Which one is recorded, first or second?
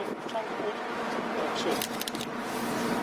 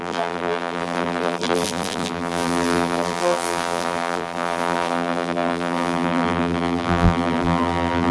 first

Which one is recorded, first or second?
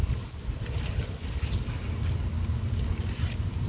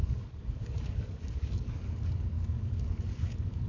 first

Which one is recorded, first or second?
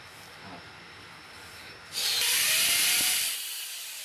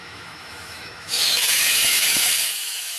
first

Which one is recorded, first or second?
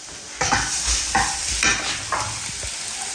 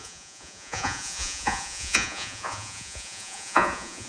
first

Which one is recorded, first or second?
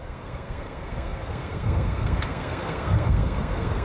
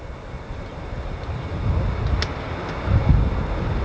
second